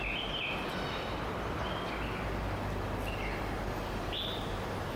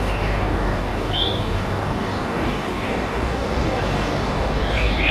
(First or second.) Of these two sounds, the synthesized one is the second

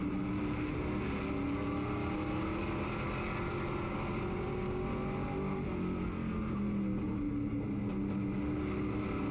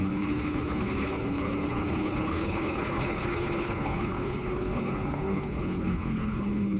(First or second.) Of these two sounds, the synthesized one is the second